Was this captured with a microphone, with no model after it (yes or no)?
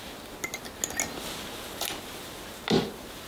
yes